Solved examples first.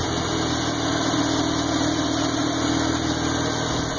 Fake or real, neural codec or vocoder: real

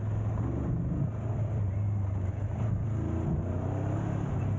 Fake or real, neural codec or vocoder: real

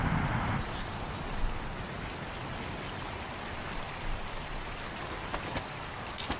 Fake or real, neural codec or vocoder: real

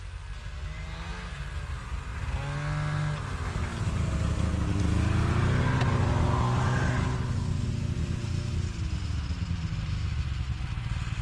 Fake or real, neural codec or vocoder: real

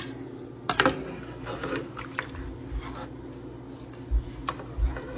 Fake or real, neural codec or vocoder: real